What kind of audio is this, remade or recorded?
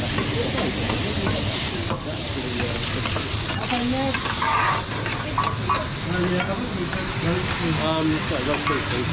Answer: recorded